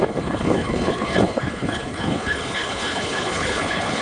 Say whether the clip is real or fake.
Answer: fake